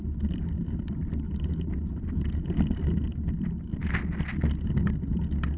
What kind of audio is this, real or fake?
real